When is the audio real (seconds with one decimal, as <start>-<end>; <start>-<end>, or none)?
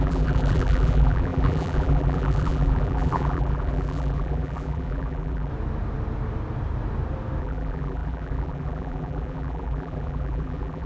5.5-7.4